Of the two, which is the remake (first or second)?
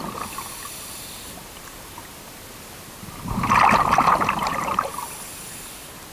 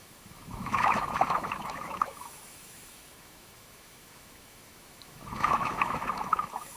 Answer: second